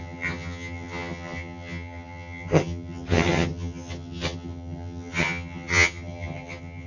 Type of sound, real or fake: fake